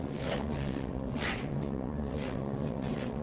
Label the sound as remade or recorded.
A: remade